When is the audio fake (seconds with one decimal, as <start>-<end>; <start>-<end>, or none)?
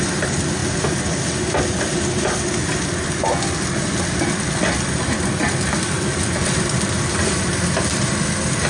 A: none